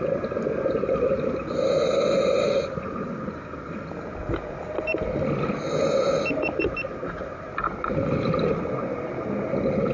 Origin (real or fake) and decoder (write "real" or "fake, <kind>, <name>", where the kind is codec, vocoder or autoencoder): real